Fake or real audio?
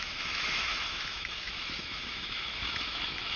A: fake